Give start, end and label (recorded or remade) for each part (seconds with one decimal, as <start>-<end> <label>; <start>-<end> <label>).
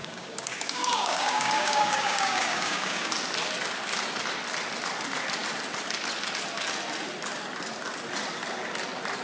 0.0-3.1 remade; 3.1-9.2 recorded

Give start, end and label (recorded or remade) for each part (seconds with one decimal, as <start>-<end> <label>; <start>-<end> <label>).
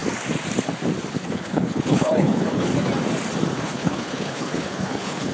0.0-1.1 recorded; 1.1-2.7 remade; 2.7-3.5 recorded; 3.5-5.3 remade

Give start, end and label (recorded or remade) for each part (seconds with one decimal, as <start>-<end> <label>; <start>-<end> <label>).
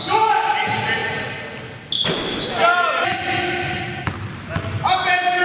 0.0-5.4 recorded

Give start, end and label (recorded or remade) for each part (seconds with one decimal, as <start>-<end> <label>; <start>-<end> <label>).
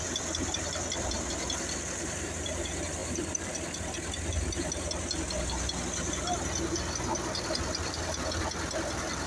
0.0-9.3 recorded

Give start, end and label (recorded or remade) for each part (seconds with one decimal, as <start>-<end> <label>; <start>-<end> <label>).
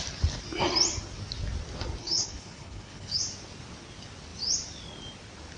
0.0-2.0 recorded; 2.0-3.2 remade; 3.2-5.6 recorded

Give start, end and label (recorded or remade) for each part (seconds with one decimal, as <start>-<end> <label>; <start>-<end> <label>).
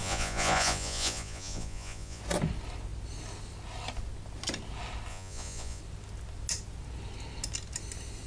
0.0-2.2 remade; 2.2-5.1 recorded; 5.1-5.8 remade; 5.8-8.3 recorded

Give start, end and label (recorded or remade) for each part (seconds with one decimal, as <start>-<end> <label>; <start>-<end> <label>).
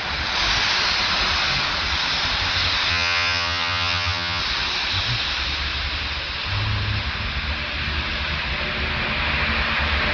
0.0-2.9 recorded; 2.9-4.4 remade; 4.4-10.1 recorded